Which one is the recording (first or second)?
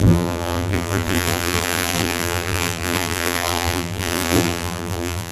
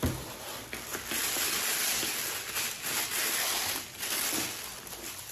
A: second